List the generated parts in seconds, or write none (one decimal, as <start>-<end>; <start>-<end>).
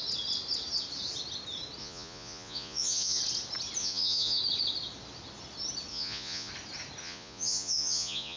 1.8-3.2; 3.8-4.4; 5.9-6.5; 7.0-8.4